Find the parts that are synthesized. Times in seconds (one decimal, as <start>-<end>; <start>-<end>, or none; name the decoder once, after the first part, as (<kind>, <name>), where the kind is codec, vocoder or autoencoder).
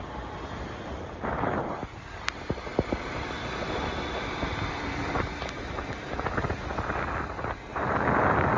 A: none